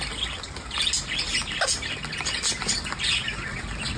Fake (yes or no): no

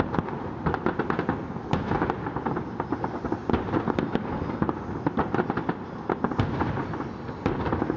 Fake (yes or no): no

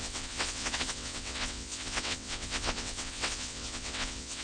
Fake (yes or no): yes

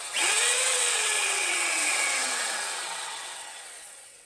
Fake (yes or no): yes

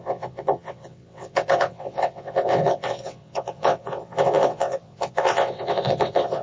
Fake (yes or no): yes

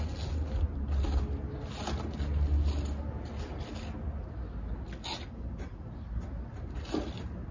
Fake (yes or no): no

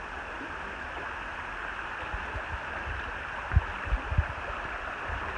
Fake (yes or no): no